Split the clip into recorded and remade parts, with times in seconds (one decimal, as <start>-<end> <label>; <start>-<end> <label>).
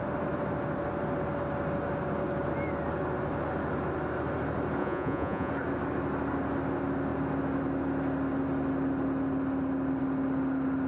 0.0-4.8 recorded; 4.8-5.5 remade; 5.5-10.9 recorded